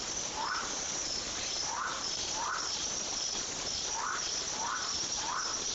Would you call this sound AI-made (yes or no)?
yes